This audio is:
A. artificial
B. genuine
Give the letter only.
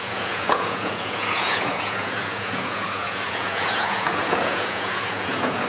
A